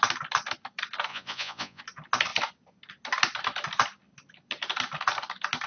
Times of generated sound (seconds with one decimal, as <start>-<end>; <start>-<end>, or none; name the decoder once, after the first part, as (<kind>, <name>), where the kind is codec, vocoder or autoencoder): 1.1-1.8 (vocoder, Vocos)